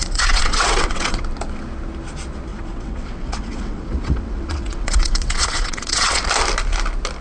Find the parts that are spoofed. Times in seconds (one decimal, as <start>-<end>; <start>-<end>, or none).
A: 0.0-1.2; 2.5-6.2